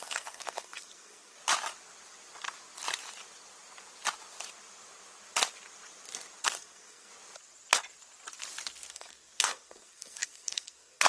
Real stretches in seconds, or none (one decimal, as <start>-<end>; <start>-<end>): 1.4-6.4; 7.1-8.9